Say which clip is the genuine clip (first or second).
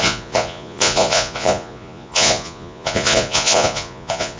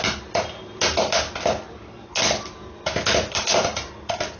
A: second